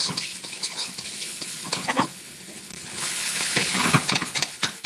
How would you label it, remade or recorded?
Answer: remade